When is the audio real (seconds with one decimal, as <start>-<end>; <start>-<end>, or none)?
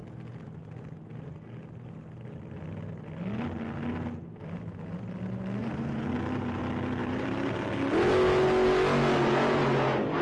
0.0-5.6; 6.6-7.0; 7.5-10.2